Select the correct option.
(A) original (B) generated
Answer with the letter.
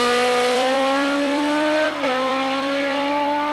B